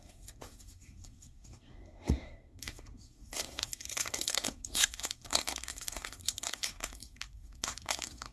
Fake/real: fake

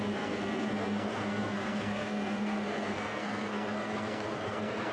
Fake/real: fake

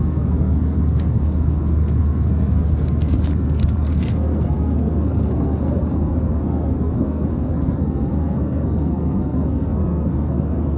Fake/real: fake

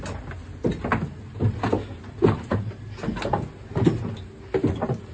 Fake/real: real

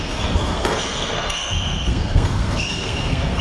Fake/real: fake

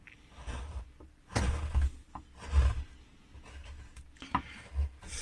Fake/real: real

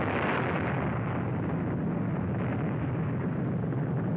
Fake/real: real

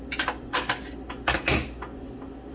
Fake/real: real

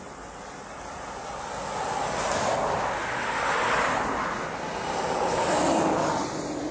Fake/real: real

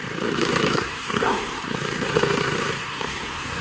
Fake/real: fake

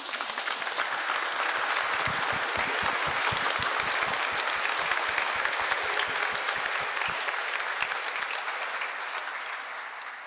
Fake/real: real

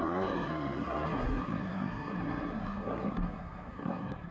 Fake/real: fake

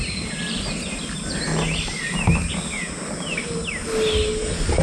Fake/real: real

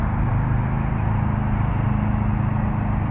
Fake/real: real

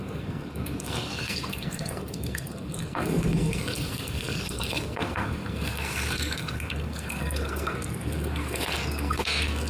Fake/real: fake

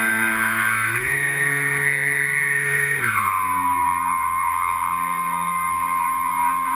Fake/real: fake